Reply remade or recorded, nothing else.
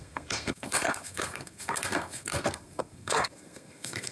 remade